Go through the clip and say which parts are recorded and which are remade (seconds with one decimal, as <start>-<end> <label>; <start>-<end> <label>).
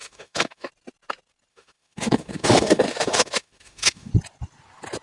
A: 0.0-0.7 remade; 0.7-1.5 recorded; 1.5-4.1 remade; 4.1-5.0 recorded